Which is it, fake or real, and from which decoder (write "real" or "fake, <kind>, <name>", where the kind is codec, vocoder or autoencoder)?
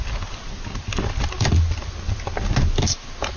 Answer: real